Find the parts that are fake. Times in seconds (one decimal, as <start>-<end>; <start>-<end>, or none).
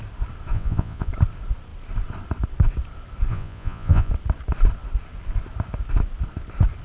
0.5-1.1; 3.3-4.1